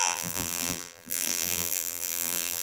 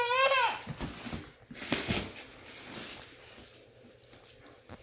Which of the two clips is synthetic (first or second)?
first